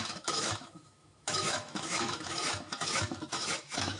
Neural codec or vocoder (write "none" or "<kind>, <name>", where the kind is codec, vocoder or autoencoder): autoencoder, DAC-VAE